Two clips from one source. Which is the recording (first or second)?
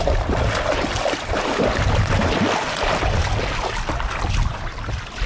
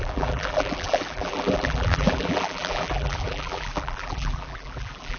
first